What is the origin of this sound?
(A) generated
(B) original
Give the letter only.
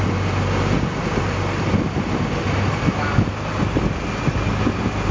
B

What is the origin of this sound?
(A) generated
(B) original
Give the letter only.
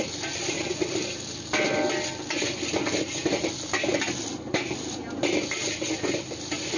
B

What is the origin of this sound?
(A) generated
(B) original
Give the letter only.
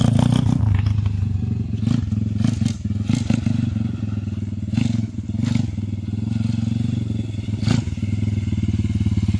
B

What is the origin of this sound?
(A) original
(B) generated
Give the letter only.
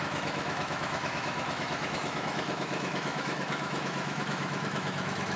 B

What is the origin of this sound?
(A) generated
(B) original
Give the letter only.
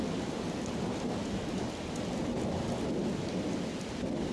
B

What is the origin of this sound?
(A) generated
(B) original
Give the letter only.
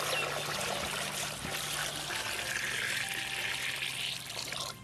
B